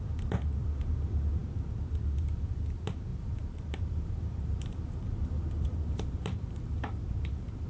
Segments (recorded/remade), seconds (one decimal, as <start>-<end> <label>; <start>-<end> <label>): 0.0-3.1 recorded; 3.1-7.7 remade